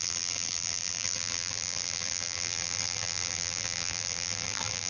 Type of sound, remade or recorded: remade